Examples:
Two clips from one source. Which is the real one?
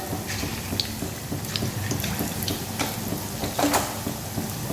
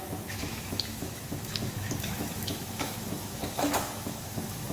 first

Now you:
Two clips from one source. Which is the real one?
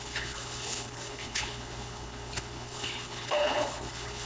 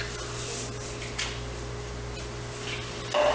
second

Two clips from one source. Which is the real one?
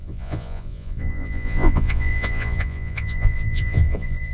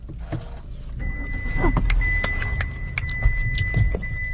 second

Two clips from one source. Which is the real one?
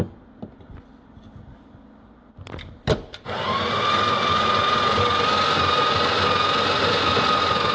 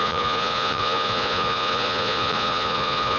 first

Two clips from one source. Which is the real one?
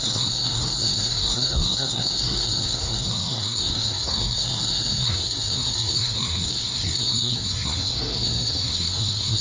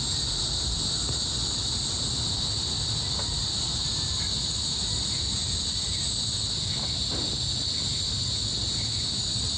second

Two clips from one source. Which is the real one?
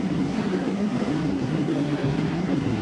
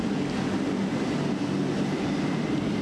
second